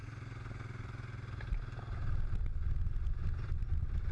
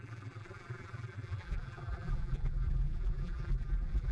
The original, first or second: first